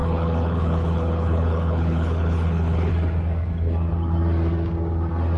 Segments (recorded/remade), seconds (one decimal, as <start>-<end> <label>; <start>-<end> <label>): 0.0-2.9 remade; 2.9-5.4 recorded